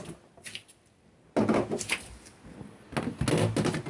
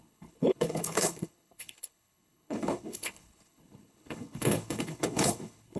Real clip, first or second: first